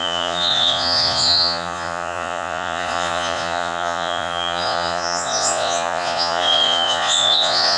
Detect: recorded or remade remade